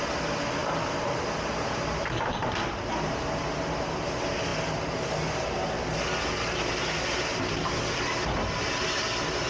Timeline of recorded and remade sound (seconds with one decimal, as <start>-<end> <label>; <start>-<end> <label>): 0.0-0.6 recorded; 0.6-4.1 remade; 4.1-4.5 recorded; 4.5-5.8 remade; 5.8-9.5 recorded